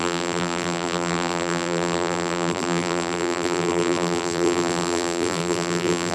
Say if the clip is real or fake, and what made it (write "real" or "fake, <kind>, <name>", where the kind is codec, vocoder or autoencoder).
fake, vocoder, BigVGAN v2